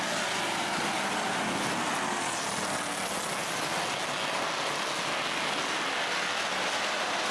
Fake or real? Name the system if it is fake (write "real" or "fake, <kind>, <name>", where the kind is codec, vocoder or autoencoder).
real